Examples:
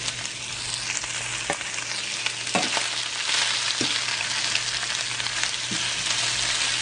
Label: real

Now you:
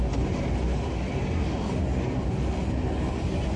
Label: real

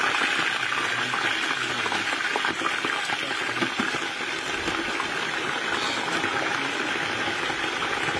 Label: real